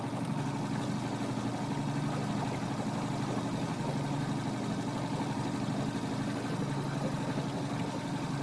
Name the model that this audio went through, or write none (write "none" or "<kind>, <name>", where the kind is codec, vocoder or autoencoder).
none